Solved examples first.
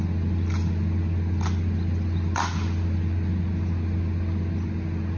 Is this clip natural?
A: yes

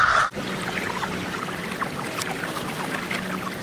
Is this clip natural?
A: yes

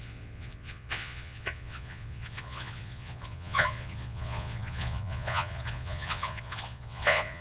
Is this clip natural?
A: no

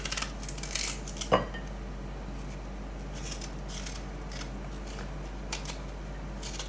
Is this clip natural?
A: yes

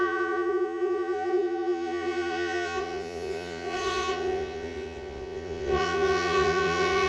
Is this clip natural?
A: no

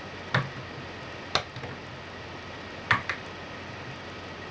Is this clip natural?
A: yes